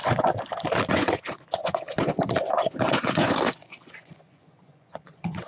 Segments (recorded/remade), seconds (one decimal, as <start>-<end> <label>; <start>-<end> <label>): 0.0-0.9 recorded; 0.9-5.5 remade